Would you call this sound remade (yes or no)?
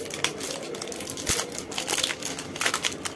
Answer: no